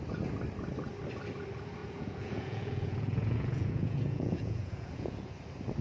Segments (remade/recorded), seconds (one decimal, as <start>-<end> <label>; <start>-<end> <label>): 0.0-1.8 recorded; 1.8-5.3 remade; 5.3-5.8 recorded